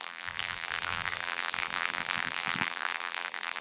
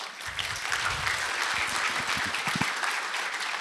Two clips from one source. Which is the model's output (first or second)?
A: first